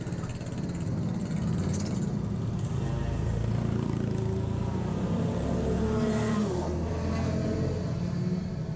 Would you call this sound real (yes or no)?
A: yes